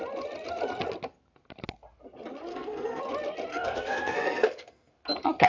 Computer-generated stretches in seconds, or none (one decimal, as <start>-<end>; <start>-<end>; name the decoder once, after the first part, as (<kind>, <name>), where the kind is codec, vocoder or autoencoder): 2.5-3.0 (codec, SNAC); 3.5-4.9